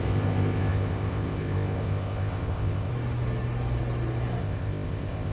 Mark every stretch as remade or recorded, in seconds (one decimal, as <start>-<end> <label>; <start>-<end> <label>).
0.0-2.9 remade; 2.9-4.4 recorded; 4.4-5.3 remade